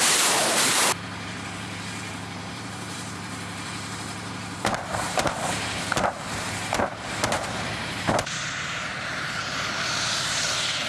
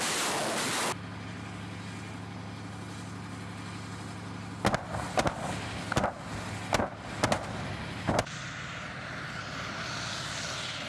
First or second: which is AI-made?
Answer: first